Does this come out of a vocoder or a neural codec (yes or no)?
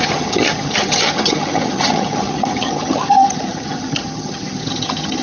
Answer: yes